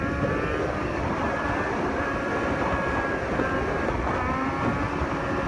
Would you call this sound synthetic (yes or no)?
no